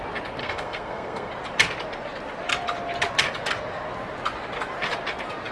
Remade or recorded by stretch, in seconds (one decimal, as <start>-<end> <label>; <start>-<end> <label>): 0.0-0.4 recorded; 0.4-1.3 remade; 1.3-5.5 recorded